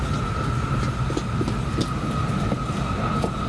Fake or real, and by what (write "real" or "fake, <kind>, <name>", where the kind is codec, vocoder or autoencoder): real